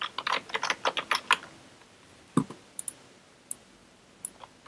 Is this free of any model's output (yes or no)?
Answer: yes